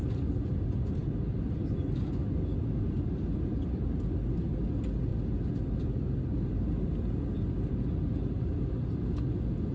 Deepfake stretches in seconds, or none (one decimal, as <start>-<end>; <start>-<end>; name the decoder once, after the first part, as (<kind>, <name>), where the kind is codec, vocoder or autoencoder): none